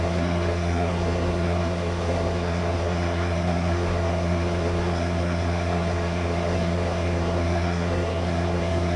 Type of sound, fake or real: fake